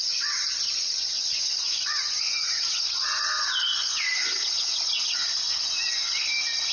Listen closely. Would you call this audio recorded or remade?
recorded